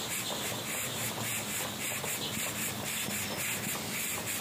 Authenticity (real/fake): real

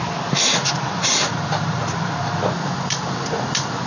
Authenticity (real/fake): fake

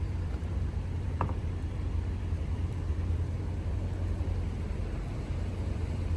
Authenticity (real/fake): fake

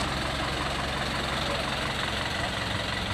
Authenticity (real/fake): real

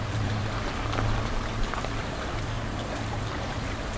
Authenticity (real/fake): fake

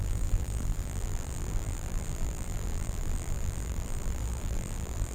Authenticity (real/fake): fake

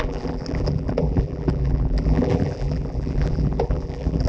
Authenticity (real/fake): fake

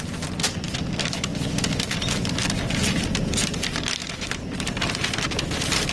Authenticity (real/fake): real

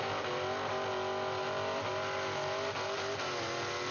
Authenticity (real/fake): real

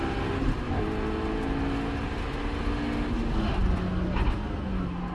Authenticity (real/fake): real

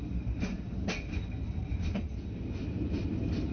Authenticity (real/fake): real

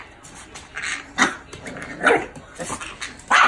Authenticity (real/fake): fake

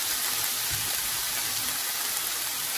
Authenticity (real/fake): real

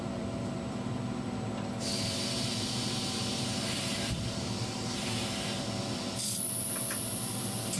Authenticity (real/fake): fake